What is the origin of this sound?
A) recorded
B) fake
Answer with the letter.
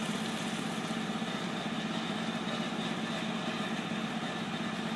A